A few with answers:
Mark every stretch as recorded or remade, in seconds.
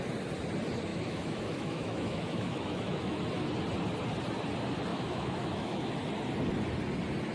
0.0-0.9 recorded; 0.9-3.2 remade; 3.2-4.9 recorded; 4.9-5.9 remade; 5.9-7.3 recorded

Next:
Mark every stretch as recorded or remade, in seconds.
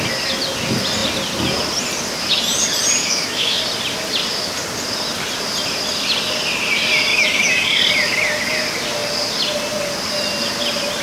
0.0-3.0 recorded; 3.0-3.6 remade; 3.6-7.1 recorded; 7.1-7.8 remade; 7.8-11.0 recorded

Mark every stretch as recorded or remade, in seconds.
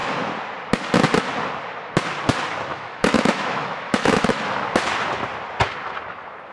0.0-2.7 recorded; 2.7-4.4 remade; 4.4-6.5 recorded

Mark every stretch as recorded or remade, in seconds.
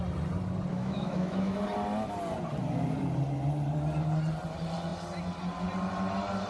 0.0-0.7 recorded; 0.7-1.6 remade; 1.6-6.5 recorded